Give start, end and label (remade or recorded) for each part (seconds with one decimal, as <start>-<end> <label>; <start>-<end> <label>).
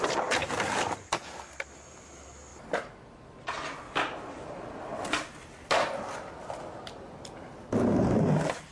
0.0-8.7 recorded